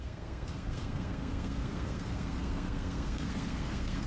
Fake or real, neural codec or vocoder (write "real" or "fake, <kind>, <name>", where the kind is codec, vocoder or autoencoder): fake, codec, SNAC